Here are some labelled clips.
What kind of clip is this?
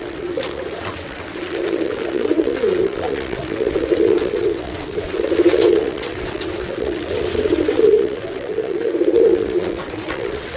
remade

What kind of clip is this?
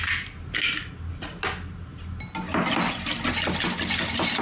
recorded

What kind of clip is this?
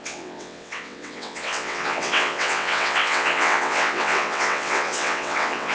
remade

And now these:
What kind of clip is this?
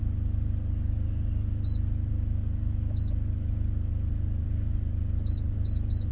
recorded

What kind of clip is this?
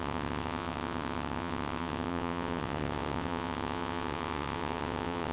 remade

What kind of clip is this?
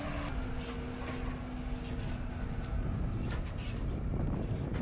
recorded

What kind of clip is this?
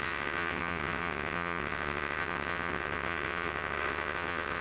remade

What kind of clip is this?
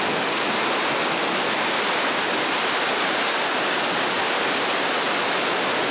recorded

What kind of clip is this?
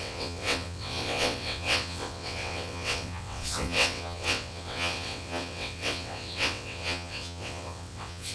remade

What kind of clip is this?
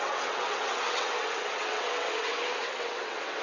remade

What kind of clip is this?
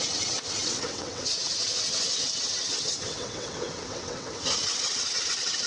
remade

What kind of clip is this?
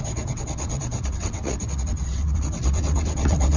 remade